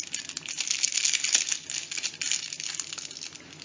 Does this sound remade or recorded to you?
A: recorded